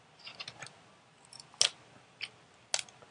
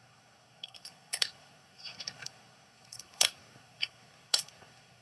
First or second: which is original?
first